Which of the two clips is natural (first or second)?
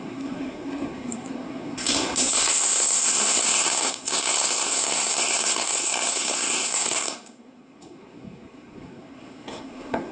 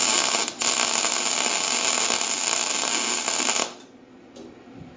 second